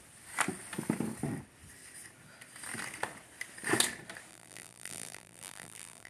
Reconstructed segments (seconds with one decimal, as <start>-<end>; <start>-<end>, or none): 4.3-6.1